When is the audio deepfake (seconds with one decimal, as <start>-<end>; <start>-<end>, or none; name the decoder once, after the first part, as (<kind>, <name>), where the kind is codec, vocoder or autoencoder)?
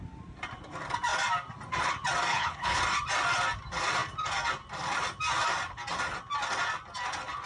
2.3-2.8 (codec, HILCodec)